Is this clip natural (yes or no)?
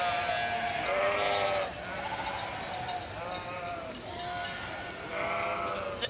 yes